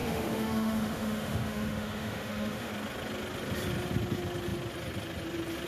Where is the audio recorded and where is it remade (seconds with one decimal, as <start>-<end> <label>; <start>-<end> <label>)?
0.0-2.7 remade; 2.7-5.7 recorded